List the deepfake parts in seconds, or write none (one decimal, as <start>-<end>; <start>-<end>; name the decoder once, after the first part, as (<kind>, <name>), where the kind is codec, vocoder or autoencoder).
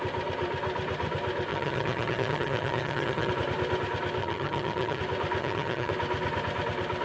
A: 1.5-3.3 (vocoder, HiFi-GAN); 4.2-5.0; 5.4-5.9